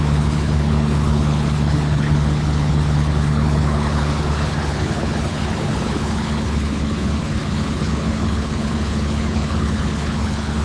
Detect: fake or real fake